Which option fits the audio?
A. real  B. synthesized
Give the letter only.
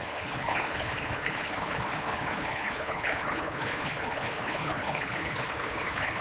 B